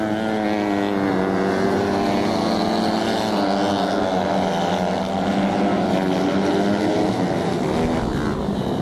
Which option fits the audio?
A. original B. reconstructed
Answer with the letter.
A